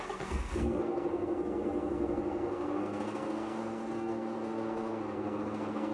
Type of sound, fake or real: fake